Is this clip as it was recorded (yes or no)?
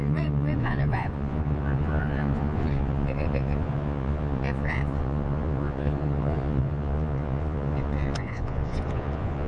no